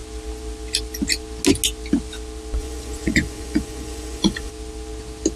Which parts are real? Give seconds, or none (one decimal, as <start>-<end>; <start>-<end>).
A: 0.0-2.6; 4.5-5.4